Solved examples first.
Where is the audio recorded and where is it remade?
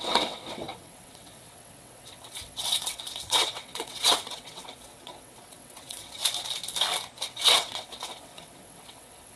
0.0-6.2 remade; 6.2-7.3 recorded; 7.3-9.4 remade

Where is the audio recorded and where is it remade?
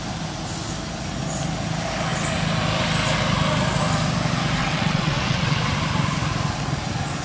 0.0-4.6 recorded; 4.6-5.6 remade; 5.6-7.2 recorded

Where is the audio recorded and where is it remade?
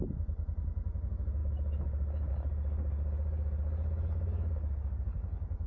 0.0-5.7 recorded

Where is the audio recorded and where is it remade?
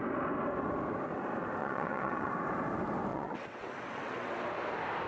0.0-1.6 recorded; 1.6-2.3 remade; 2.3-3.1 recorded; 3.1-4.3 remade; 4.3-5.1 recorded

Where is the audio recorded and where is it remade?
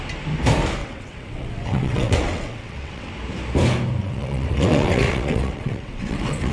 0.0-0.8 recorded; 0.8-3.1 remade; 3.1-4.0 recorded; 4.0-6.5 remade